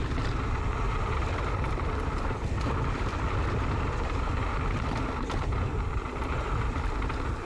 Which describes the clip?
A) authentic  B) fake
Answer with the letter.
B